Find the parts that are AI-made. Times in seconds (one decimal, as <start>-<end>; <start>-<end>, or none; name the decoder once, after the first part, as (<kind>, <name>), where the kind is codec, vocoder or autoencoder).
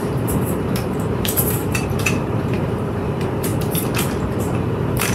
0.0-3.5 (vocoder, BigVGAN v2); 4.6-5.1